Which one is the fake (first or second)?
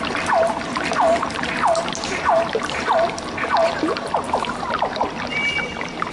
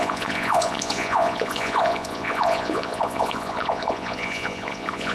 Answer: second